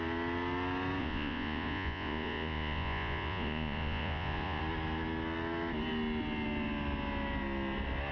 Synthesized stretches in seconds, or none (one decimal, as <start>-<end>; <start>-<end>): 1.0-4.6